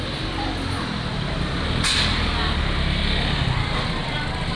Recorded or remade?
recorded